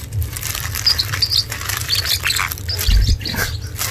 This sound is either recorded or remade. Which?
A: recorded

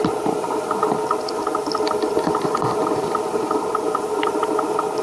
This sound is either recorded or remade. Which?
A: recorded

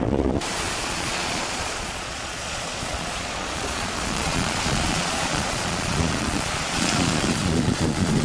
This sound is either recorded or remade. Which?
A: remade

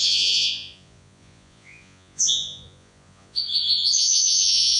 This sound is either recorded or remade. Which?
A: remade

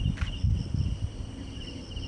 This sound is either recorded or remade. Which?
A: recorded